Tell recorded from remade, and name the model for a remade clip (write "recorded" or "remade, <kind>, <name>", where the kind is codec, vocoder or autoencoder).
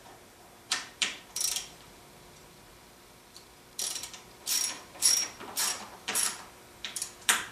remade, vocoder, BigVGAN v2